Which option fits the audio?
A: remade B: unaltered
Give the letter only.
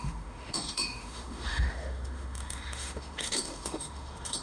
A